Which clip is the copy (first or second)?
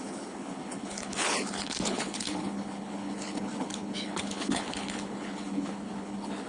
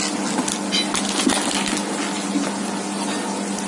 first